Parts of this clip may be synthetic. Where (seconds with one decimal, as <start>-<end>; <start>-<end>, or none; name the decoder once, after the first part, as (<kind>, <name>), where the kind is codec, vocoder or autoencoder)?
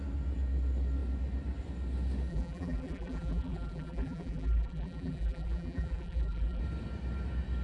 2.3-6.6 (vocoder, BigVGAN v2)